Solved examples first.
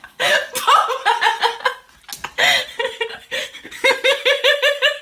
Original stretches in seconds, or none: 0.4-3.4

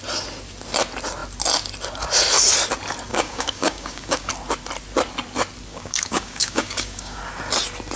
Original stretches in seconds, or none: 0.0-3.1; 4.3-5.7; 7.2-8.0

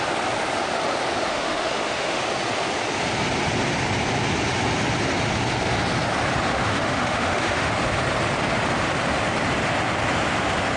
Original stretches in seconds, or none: 0.0-1.3; 2.2-6.5; 7.7-10.8

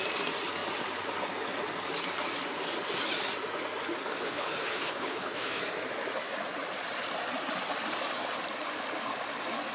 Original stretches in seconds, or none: 0.0-4.2; 5.6-9.7

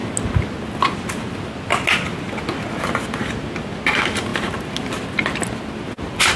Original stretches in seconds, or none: 0.0-6.4